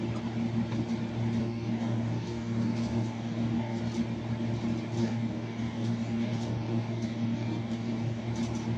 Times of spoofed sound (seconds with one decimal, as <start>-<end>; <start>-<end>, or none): 1.4-3.8; 5.0-8.3